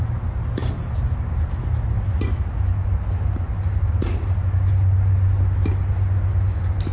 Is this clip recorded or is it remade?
recorded